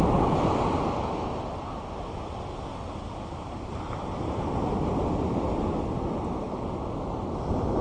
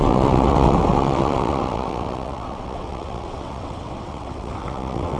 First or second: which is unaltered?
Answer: first